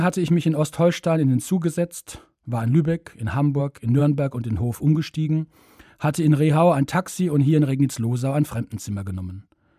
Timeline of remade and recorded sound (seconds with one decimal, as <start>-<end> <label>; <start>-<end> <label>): 0.0-9.8 recorded